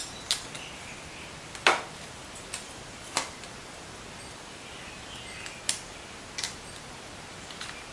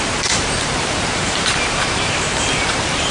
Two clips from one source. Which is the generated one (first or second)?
second